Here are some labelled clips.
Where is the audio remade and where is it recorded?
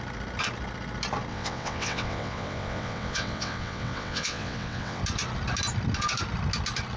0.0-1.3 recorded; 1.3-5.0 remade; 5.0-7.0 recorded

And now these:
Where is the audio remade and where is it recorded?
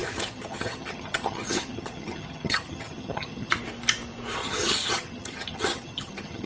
0.0-3.5 remade; 3.5-4.4 recorded; 4.4-6.5 remade